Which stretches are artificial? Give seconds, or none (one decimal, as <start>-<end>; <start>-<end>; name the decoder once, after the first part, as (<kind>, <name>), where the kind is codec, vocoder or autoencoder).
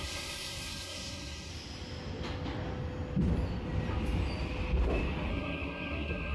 0.0-1.5 (codec, SNAC); 5.3-6.3